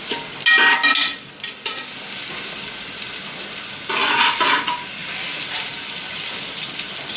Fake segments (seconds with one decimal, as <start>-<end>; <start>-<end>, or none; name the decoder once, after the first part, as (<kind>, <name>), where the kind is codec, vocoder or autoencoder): none